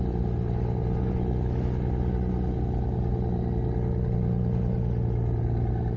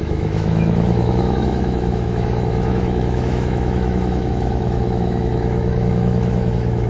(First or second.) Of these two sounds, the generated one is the second